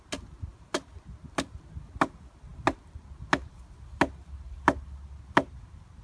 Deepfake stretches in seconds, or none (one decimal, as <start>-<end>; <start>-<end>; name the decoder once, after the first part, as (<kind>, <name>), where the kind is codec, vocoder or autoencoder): none